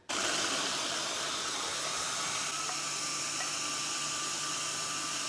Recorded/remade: recorded